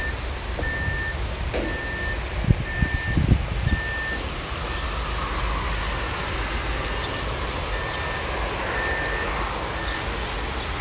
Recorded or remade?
recorded